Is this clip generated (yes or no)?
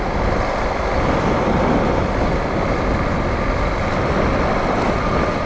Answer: no